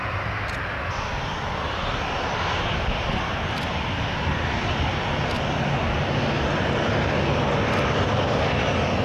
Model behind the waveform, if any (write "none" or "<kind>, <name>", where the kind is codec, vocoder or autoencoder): none